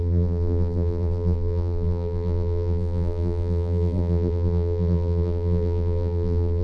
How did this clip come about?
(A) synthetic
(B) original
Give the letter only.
A